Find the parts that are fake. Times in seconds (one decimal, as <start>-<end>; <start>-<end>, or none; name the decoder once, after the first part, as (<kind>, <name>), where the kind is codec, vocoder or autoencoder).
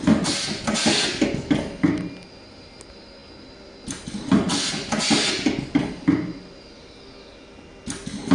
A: none